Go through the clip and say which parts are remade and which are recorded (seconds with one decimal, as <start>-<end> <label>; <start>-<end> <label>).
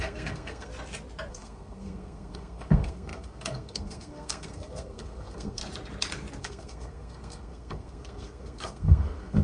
0.0-0.7 remade; 0.7-1.3 recorded; 1.3-5.6 remade; 5.6-6.4 recorded; 6.4-9.4 remade